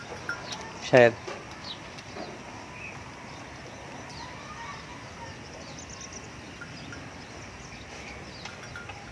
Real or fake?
real